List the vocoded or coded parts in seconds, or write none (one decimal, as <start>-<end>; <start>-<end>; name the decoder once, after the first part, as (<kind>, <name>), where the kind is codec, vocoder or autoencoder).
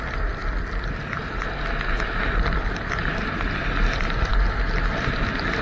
none